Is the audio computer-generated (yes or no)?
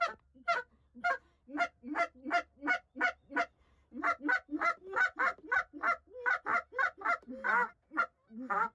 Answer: no